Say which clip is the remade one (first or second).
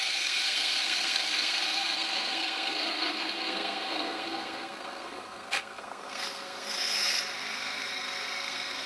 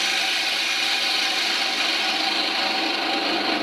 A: first